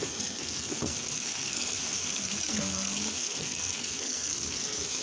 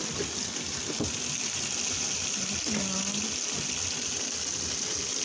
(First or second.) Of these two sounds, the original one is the second